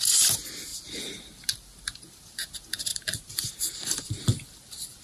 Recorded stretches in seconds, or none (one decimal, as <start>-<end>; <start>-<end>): 0.0-2.9; 4.2-5.0